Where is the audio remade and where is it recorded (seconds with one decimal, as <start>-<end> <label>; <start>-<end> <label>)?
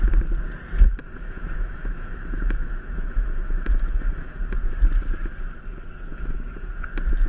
0.0-1.0 recorded; 1.0-4.4 remade; 4.4-6.1 recorded; 6.1-6.7 remade; 6.7-7.3 recorded